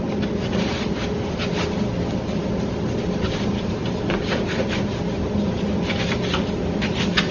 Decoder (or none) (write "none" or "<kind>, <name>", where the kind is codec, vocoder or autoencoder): none